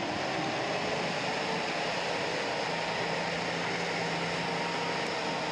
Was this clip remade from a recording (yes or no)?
no